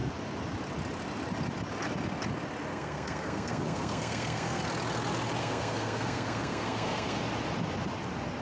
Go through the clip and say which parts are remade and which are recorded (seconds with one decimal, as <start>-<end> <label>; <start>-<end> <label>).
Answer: 0.0-2.7 recorded; 2.7-4.6 remade; 4.6-5.4 recorded; 5.4-7.2 remade; 7.2-8.4 recorded